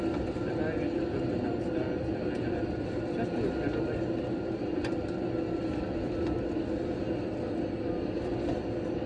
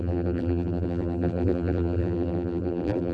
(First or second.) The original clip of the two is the first